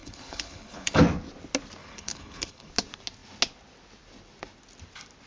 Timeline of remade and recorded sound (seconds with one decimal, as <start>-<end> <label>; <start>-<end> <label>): 0.0-1.0 remade; 1.0-1.8 recorded; 1.8-2.7 remade; 2.7-5.3 recorded